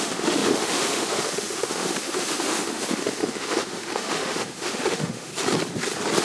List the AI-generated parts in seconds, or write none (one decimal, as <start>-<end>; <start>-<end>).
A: 0.0-5.3